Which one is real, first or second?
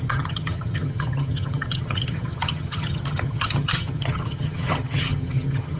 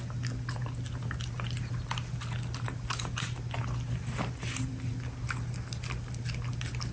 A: second